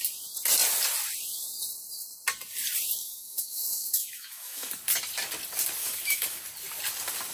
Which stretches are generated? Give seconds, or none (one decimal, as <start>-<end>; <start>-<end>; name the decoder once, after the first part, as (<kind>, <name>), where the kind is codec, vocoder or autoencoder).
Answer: 3.0-4.7 (autoencoder, DAC-VAE); 5.8-6.4